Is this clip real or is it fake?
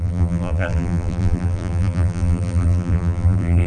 fake